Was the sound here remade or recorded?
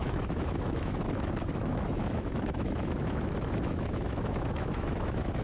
remade